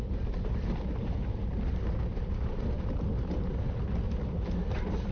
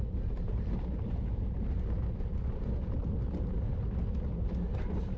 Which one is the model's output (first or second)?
first